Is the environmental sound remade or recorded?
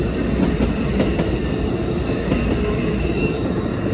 recorded